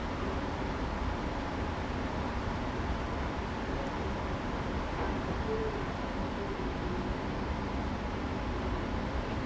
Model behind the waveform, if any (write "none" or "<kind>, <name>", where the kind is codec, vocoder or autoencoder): none